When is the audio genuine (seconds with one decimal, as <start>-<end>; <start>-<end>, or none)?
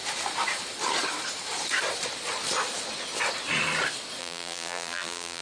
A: 0.0-4.2